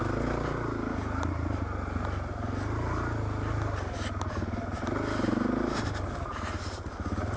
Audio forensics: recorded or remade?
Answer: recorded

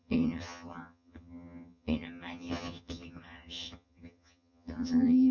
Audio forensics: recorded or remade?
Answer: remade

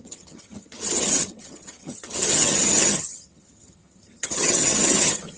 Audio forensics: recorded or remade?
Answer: remade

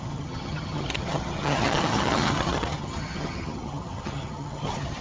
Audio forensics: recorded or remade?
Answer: remade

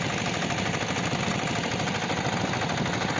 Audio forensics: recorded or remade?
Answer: recorded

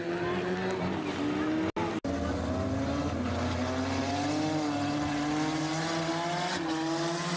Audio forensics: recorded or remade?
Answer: recorded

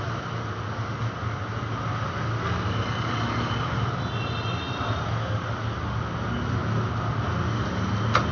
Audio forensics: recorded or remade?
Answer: recorded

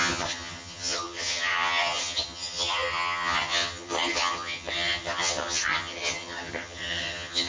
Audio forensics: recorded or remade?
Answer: remade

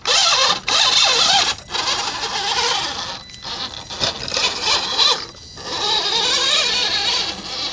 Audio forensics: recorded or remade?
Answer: recorded